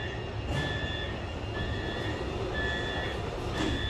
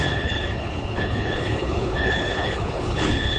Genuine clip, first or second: first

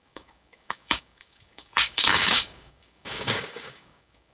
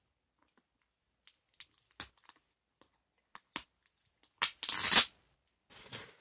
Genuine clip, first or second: second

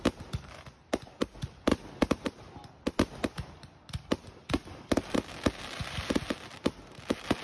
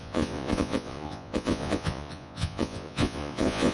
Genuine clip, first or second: first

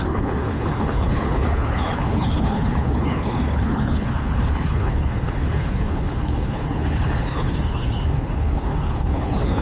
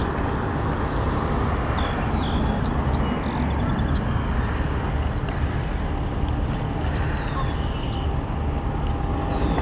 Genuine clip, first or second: second